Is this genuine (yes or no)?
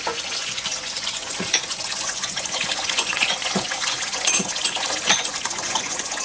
no